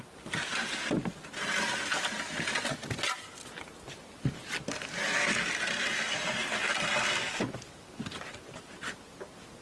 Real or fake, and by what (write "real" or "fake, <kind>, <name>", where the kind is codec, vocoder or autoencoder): real